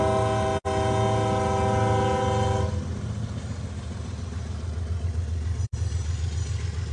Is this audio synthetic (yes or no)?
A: no